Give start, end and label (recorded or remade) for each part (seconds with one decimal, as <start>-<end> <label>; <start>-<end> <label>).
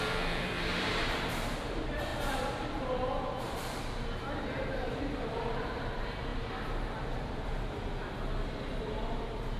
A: 0.0-7.9 remade; 7.9-8.8 recorded; 8.8-9.6 remade